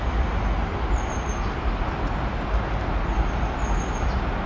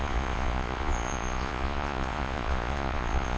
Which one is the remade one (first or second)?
second